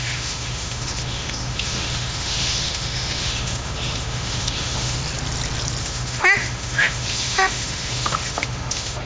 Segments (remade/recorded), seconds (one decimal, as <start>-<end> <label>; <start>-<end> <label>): 0.0-5.0 remade; 5.0-5.8 recorded; 5.8-9.1 remade